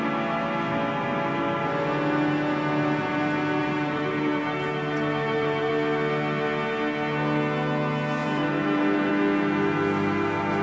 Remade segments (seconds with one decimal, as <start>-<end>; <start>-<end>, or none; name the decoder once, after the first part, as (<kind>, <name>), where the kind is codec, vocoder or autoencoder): 3.6-5.7 (vocoder, BigVGAN v2); 8.2-9.1